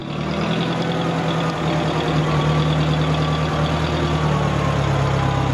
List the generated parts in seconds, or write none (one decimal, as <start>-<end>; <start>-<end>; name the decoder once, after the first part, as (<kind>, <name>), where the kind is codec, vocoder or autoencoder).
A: none